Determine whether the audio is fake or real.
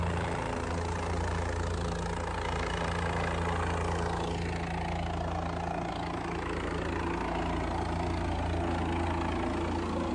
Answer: real